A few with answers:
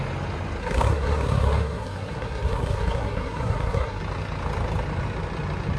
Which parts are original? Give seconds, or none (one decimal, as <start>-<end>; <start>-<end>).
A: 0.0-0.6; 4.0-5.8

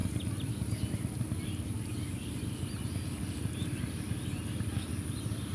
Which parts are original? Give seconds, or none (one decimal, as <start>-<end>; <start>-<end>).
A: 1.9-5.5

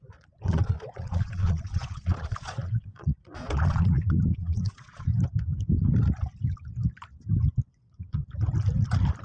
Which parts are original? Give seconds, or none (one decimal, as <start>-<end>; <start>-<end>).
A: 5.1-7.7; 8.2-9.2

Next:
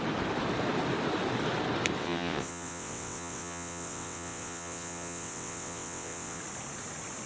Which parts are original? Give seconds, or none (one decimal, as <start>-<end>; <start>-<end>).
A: 0.0-2.0; 6.4-7.3

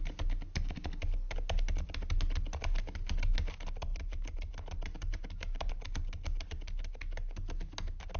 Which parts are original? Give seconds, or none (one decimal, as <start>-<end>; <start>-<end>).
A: 0.0-3.9; 5.7-8.2

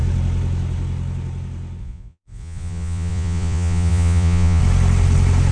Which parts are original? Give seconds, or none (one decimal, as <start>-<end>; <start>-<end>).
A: 0.0-1.8; 4.6-5.5

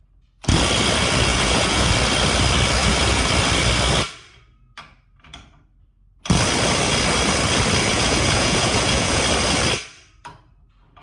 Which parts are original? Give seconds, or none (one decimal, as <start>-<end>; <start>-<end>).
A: 0.0-1.3; 1.9-2.8; 3.3-7.9; 9.2-11.0